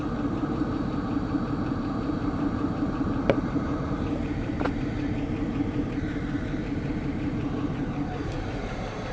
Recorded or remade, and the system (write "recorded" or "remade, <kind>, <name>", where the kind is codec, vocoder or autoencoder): remade, vocoder, BigVGAN v2